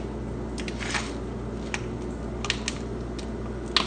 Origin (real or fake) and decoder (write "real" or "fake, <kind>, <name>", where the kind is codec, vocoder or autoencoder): real